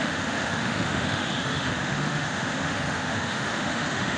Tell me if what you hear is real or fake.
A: fake